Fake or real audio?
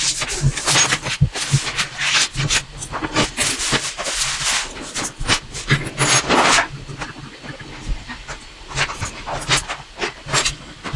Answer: real